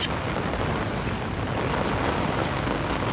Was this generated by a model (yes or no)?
no